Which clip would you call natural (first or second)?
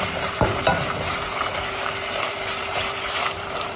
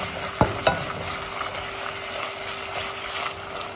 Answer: second